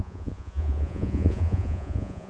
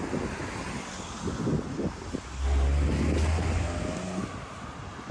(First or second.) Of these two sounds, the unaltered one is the second